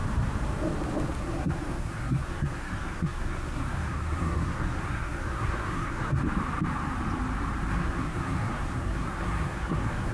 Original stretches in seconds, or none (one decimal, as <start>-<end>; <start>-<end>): 0.0-1.2; 6.2-7.7